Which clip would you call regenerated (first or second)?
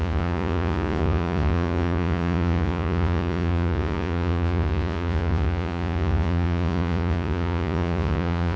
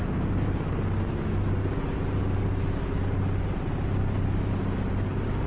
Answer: first